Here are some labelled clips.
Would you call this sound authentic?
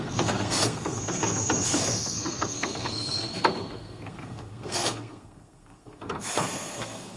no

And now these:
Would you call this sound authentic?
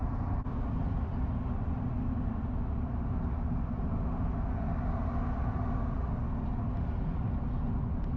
yes